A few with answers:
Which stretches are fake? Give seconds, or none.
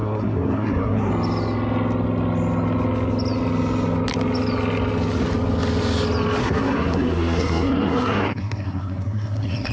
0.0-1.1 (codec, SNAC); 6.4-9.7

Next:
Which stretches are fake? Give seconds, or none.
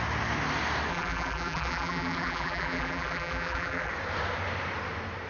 0.9-3.9 (vocoder, BigVGAN v2)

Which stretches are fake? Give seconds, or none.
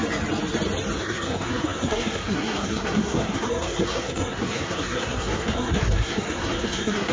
1.0-7.1 (codec, SNAC)